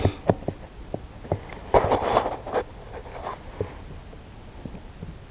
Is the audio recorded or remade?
recorded